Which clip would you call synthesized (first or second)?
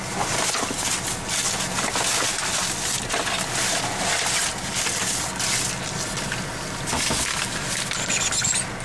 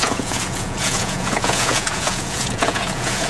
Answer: second